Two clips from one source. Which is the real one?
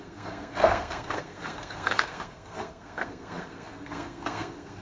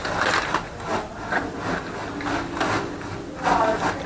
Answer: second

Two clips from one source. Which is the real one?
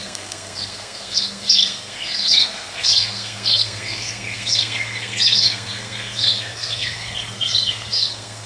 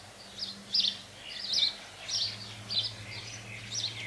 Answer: second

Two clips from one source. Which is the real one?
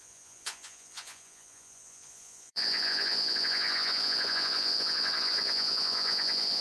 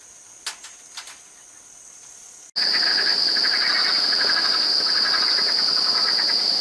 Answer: second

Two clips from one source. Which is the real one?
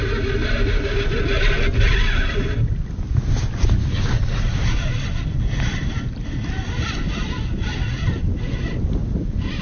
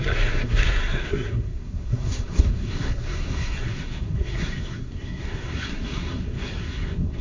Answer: first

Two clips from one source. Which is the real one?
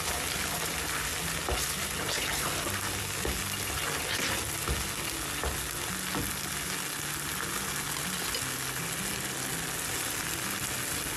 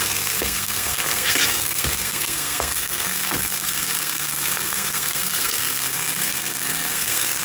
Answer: first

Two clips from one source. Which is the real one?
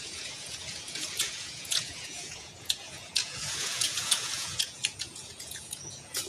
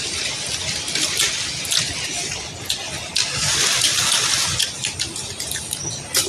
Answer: second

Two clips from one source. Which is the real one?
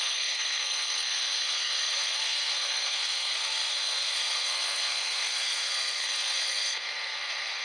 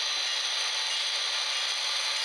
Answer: second